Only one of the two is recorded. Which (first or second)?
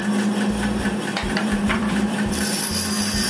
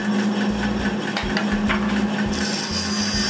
second